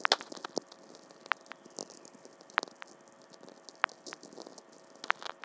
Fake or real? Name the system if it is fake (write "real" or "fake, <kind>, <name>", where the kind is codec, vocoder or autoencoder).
real